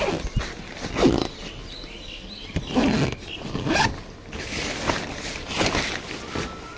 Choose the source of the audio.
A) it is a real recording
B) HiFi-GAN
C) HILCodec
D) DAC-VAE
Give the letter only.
A